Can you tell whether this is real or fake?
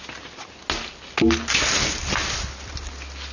real